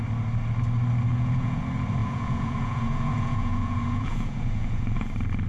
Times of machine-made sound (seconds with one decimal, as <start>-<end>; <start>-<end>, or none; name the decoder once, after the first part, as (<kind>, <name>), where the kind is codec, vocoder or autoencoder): 1.1-1.6 (vocoder, Vocos); 2.0-5.1